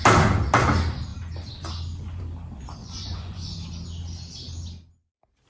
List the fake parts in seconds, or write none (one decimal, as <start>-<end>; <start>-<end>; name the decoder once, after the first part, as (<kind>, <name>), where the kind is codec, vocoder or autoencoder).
2.8-3.7 (vocoder, Vocos)